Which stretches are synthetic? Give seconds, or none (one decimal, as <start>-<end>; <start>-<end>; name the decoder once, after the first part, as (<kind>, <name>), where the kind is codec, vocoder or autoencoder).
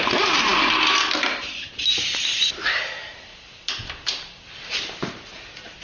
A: none